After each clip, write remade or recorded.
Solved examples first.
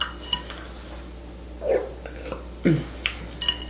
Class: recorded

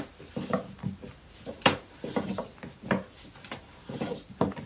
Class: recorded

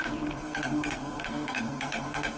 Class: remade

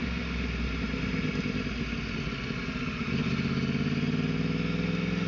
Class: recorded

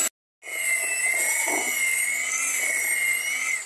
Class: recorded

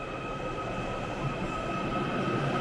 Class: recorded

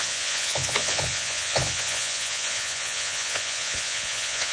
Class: remade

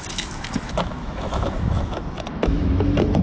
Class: remade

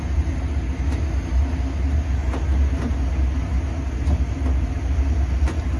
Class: recorded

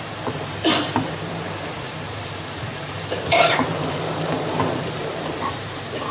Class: remade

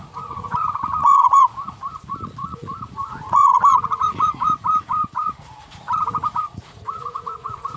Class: remade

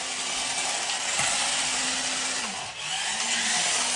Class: recorded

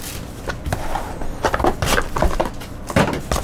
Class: recorded